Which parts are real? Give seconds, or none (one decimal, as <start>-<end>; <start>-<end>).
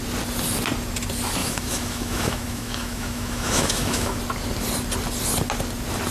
0.0-1.4; 4.2-6.1